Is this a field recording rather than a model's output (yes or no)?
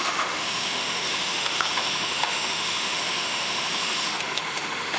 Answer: no